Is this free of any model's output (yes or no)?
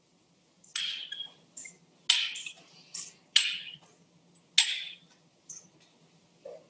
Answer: yes